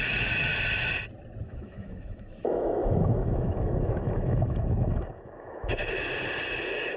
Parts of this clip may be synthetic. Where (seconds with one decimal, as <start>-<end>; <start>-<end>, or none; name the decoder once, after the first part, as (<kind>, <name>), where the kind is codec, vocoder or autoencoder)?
0.0-0.5 (autoencoder, DAC-VAE); 1.4-5.8; 6.6-7.0